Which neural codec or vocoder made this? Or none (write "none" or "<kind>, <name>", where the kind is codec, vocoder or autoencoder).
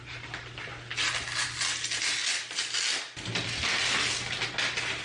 none